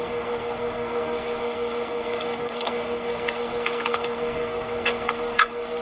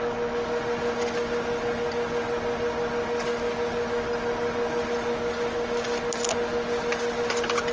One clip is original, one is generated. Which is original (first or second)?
second